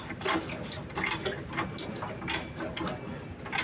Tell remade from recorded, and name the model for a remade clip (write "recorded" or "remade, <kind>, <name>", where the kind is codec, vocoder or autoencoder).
recorded